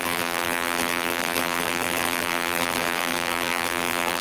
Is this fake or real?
fake